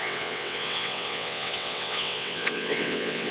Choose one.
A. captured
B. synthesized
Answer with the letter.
B